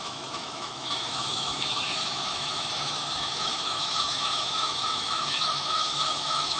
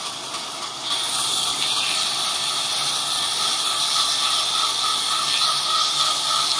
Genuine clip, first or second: second